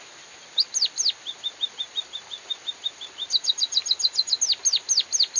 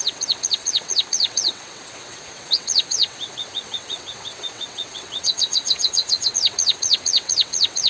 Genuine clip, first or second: first